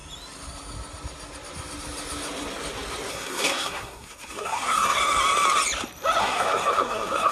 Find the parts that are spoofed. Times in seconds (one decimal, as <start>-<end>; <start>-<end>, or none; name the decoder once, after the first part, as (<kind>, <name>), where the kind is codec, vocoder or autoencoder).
3.1-5.0 (codec, SNAC); 6.2-7.3